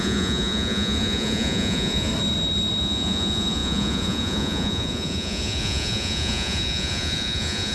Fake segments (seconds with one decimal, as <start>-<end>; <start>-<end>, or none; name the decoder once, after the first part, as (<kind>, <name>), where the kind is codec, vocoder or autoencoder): 0.0-2.1 (vocoder, Vocos); 2.8-7.7